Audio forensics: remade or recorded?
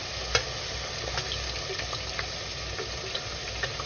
recorded